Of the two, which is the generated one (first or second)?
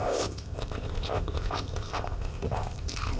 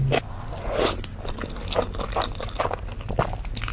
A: first